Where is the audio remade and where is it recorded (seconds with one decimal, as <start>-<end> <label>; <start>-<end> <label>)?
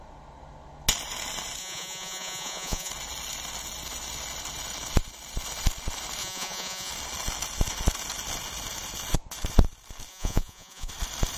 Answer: 0.0-1.6 recorded; 1.6-2.9 remade; 2.9-6.2 recorded; 6.2-6.9 remade; 6.9-10.1 recorded; 10.1-10.9 remade; 10.9-11.4 recorded